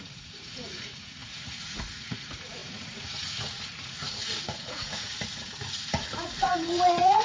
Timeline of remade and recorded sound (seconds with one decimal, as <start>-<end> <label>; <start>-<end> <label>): 0.0-7.2 remade